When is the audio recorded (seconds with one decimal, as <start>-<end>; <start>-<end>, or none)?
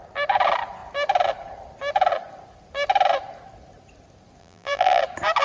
0.0-4.4; 5.0-5.4